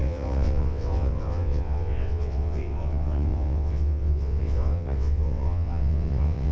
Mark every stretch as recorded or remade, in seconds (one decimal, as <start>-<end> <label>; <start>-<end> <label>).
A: 0.0-6.5 remade